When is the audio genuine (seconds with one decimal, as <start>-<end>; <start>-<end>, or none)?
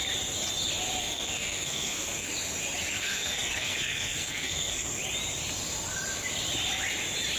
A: 0.0-1.0; 2.3-2.9; 5.0-7.4